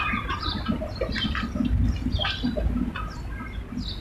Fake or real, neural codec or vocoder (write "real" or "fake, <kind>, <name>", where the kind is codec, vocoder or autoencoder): real